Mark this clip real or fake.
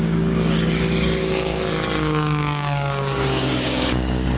fake